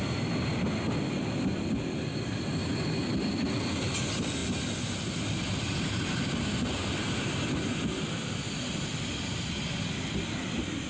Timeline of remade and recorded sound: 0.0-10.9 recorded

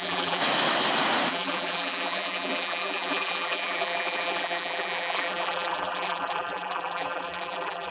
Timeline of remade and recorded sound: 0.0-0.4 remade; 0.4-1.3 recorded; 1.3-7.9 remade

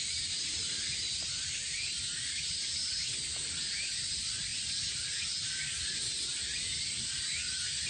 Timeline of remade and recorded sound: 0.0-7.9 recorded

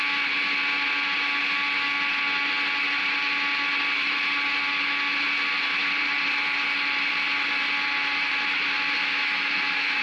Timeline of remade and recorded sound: 0.0-9.0 recorded; 9.0-10.0 remade

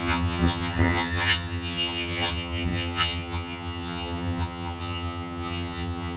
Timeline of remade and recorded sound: 0.0-6.2 remade